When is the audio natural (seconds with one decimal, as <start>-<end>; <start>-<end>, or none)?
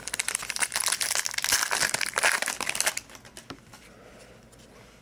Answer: 0.0-5.0